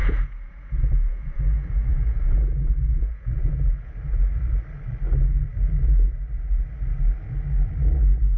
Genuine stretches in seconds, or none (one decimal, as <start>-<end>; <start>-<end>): 3.9-8.4